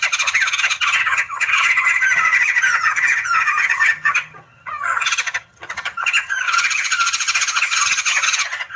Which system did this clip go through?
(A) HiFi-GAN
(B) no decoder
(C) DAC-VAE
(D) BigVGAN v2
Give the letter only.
A